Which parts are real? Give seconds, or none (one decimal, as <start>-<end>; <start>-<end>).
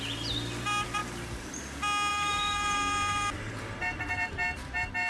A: 0.0-1.0; 1.6-2.1